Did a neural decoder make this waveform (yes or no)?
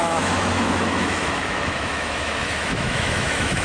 yes